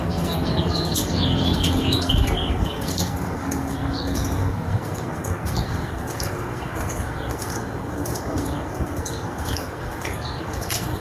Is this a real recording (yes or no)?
no